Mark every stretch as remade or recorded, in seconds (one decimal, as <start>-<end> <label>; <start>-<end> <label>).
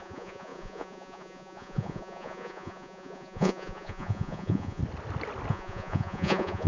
0.0-4.8 remade; 4.8-5.5 recorded; 5.5-6.7 remade